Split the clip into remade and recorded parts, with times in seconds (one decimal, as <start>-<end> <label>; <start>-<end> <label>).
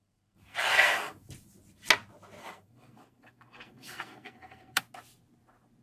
0.0-1.3 remade; 1.3-2.4 recorded; 2.4-4.8 remade; 4.8-5.8 recorded